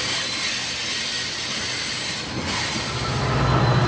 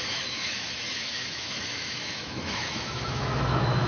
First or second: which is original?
first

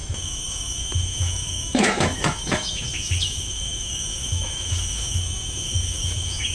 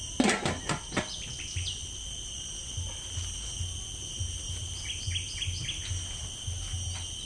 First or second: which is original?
second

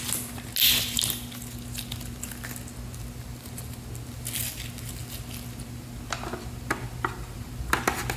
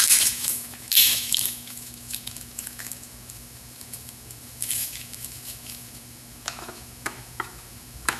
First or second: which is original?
first